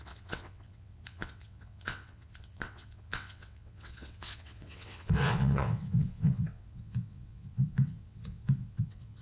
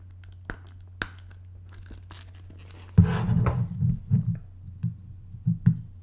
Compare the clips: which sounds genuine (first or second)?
second